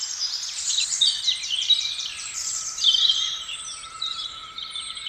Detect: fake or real fake